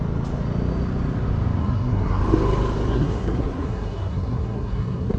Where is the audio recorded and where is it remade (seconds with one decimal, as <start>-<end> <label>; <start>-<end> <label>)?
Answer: 0.0-1.6 recorded; 1.6-2.2 remade; 2.2-2.9 recorded; 2.9-5.2 remade